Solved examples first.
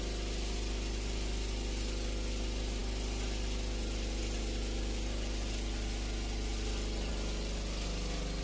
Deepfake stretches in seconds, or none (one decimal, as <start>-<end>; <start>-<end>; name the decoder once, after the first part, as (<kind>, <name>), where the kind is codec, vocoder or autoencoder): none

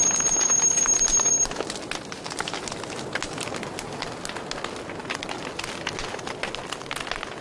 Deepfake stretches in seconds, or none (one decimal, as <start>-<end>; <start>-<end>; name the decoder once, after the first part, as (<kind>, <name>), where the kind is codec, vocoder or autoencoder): none

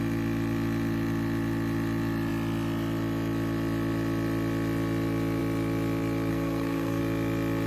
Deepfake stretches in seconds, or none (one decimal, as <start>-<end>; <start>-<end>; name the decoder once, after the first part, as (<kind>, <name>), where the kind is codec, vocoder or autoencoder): 6.3-7.0 (codec, SNAC)